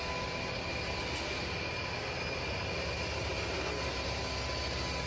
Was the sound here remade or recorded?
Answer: recorded